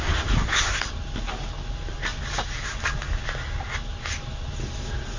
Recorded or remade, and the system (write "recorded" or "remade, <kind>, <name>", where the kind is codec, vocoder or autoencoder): recorded